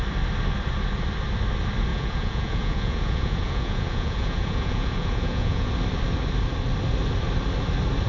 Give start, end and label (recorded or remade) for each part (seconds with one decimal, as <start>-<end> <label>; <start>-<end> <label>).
0.0-1.9 recorded; 1.9-5.7 remade; 5.7-8.1 recorded